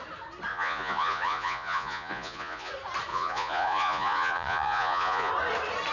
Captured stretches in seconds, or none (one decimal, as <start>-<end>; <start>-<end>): 0.0-0.5; 2.7-3.1; 5.3-5.9